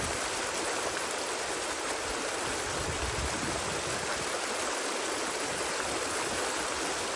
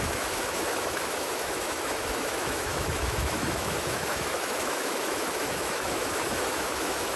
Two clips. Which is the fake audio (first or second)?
second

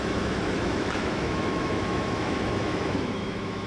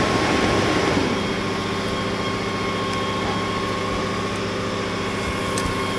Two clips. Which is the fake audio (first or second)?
first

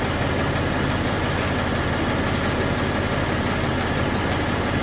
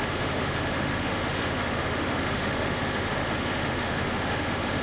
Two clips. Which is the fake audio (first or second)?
second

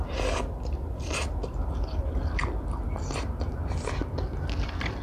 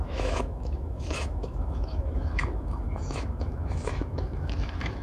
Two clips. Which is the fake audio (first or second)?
second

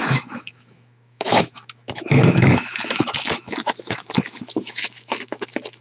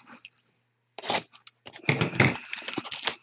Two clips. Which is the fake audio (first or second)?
first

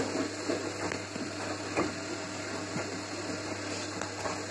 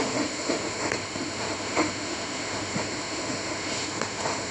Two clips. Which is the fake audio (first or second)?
second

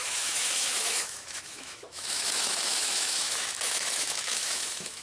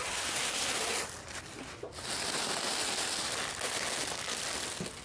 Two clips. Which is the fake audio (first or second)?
first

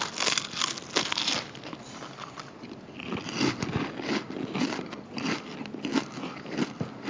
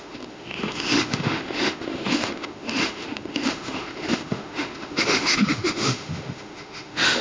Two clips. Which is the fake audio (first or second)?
second